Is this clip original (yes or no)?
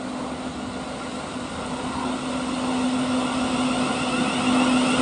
yes